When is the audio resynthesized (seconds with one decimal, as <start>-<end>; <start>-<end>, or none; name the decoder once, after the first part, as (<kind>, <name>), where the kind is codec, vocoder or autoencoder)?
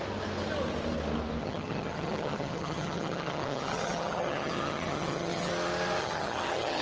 1.4-5.5 (vocoder, HiFi-GAN); 6.0-6.8